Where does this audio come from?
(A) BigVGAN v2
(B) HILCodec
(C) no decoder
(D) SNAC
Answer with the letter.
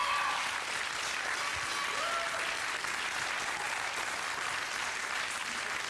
C